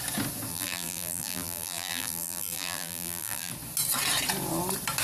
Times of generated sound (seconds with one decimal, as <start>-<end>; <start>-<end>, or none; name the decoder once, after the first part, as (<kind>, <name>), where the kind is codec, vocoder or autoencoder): 0.5-3.5 (vocoder, BigVGAN v2)